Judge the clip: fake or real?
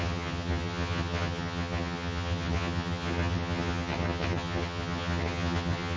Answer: fake